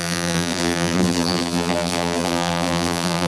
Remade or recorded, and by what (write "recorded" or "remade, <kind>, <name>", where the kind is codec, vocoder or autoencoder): remade, vocoder, BigVGAN v2